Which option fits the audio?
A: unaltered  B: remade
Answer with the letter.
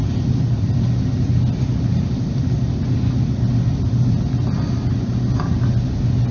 A